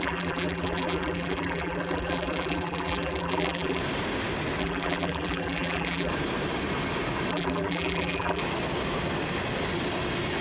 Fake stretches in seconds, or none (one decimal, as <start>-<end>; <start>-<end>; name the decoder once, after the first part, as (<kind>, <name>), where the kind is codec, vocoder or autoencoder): 0.0-3.8 (vocoder, BigVGAN v2); 4.6-6.1; 7.3-8.4